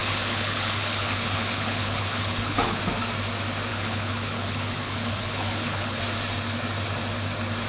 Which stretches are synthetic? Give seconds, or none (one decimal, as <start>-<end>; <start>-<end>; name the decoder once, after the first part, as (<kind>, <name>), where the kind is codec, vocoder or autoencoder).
0.0-2.8 (codec, HILCodec); 3.7-6.0